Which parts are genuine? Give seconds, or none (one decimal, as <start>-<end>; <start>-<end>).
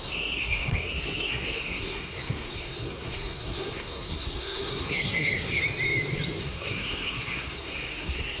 5.6-6.4